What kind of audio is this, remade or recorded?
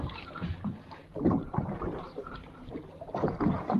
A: remade